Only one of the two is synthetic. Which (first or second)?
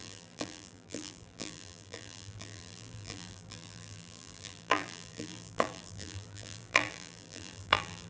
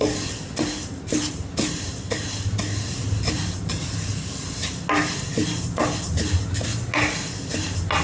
first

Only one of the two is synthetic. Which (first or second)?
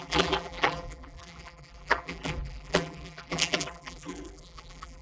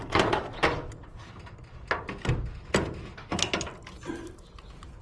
first